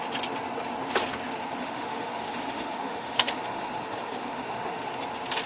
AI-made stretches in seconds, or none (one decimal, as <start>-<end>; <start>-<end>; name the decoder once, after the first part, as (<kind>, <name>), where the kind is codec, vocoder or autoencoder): 1.6-4.9 (autoencoder, DAC-VAE)